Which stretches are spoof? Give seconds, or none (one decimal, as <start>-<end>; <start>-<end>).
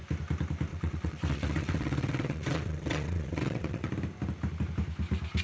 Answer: 0.7-3.9